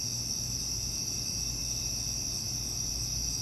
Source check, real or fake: real